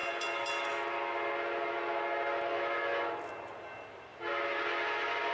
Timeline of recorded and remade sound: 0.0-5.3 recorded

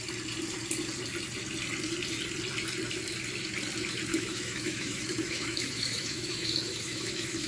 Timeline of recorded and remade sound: 0.0-4.1 recorded; 4.1-7.5 remade

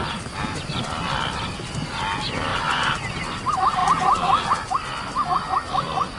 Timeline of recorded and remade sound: 0.0-2.5 recorded; 2.5-3.1 remade; 3.1-6.2 recorded

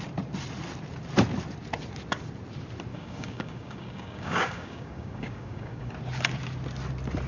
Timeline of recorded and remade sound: 0.0-2.9 recorded; 2.9-5.9 remade; 5.9-7.3 recorded

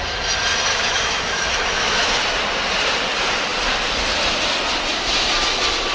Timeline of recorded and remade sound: 0.0-0.7 recorded; 0.7-2.2 remade; 2.2-5.9 recorded

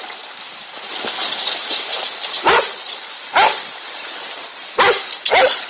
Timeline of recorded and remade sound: 0.0-5.7 recorded